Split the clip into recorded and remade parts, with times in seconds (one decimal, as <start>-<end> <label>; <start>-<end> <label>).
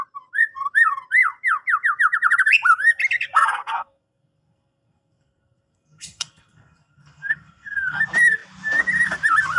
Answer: 0.0-3.3 recorded; 3.3-8.0 remade; 8.0-9.6 recorded